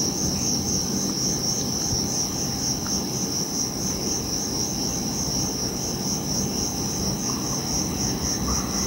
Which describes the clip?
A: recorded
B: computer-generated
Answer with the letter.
A